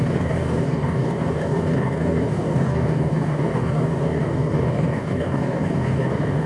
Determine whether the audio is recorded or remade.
remade